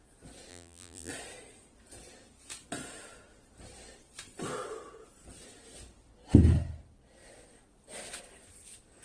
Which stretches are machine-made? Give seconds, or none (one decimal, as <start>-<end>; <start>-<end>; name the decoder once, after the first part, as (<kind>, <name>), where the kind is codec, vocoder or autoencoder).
0.5-1.1 (vocoder, BigVGAN v2)